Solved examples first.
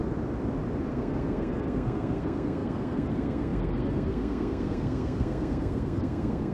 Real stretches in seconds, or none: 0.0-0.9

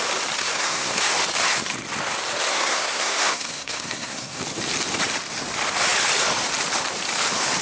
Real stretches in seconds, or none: 0.0-0.4; 1.1-2.5; 4.4-7.6

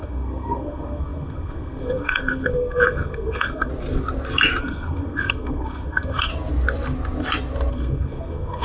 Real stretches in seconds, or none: 3.7-4.6; 6.3-7.7

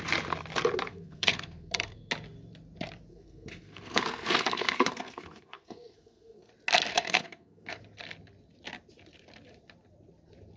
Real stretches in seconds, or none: 0.0-0.9; 2.1-3.1; 6.5-6.9; 7.8-10.6

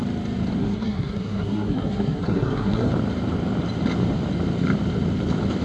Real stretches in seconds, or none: 0.0-0.6; 2.9-5.6

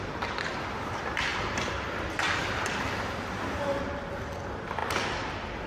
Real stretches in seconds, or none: 0.0-5.7

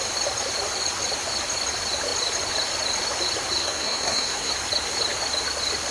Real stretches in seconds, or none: 0.0-3.6; 4.5-5.9

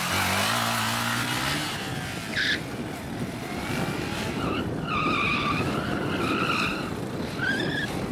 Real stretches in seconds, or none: 0.0-8.1